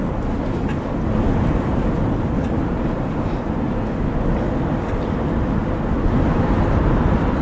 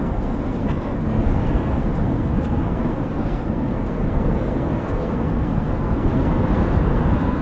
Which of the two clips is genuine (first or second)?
first